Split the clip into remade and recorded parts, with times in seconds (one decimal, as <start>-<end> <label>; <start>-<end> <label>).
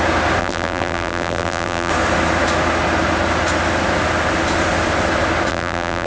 0.0-0.4 recorded; 0.4-1.9 remade; 1.9-5.5 recorded; 5.5-6.1 remade